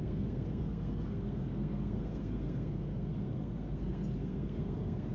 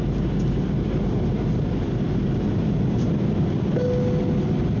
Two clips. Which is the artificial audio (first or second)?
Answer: first